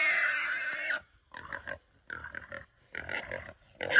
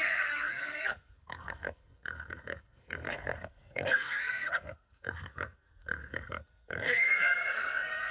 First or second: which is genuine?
first